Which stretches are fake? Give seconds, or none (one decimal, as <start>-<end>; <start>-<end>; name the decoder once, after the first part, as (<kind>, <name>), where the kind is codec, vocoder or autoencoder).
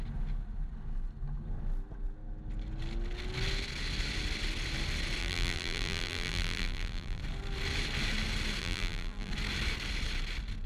5.2-7.2 (vocoder, BigVGAN v2); 8.6-9.3